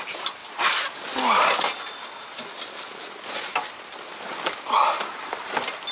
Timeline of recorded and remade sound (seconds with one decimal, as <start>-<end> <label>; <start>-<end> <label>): 0.0-5.9 recorded